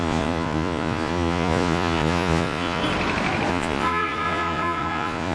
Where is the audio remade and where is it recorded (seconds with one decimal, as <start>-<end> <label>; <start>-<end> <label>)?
0.0-2.8 remade; 2.8-3.5 recorded; 3.5-5.3 remade